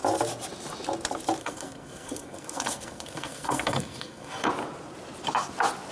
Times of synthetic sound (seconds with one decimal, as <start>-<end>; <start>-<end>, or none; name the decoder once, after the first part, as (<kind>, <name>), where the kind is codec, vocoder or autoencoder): 1.4-4.5 (codec, SNAC)